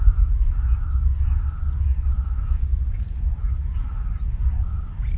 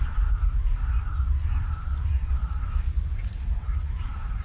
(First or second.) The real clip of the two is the first